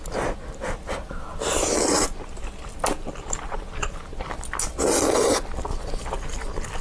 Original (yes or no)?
yes